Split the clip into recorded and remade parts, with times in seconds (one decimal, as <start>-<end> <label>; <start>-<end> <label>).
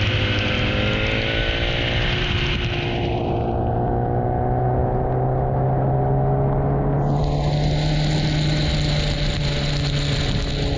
0.0-10.8 recorded